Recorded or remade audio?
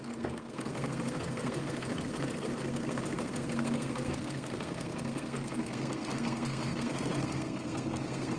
remade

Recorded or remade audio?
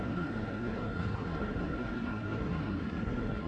remade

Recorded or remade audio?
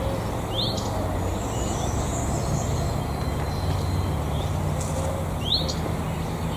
recorded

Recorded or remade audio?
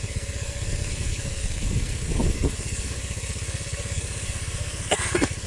remade